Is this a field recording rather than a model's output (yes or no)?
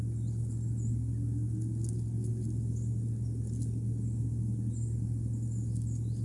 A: yes